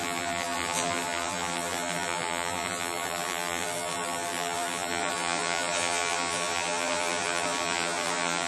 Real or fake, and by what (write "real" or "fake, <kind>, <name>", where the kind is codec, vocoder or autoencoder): fake, vocoder, BigVGAN v2